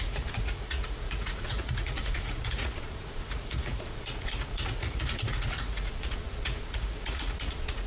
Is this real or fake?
fake